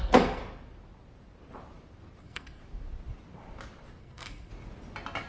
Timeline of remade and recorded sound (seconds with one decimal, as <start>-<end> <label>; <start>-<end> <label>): 0.0-0.4 remade; 0.4-2.2 recorded; 2.2-2.6 remade; 2.6-4.0 recorded; 4.0-4.5 remade; 4.5-5.3 recorded